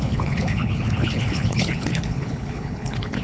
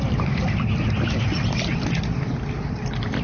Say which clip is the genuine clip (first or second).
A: second